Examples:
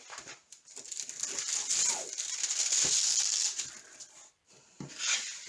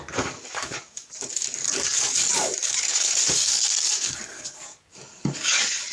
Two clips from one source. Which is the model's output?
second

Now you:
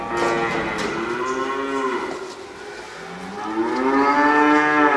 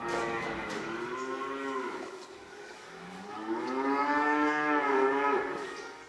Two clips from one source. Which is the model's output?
second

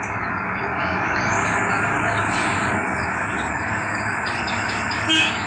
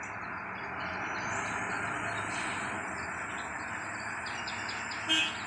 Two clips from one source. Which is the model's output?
first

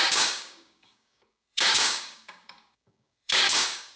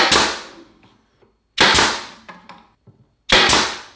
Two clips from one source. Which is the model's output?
first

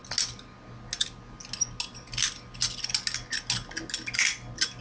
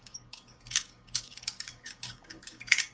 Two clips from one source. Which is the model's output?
second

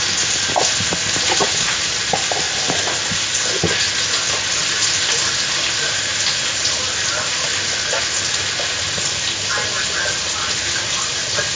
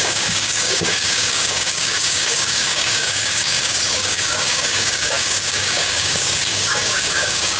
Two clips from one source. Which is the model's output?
second